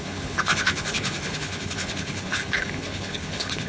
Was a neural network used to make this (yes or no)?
yes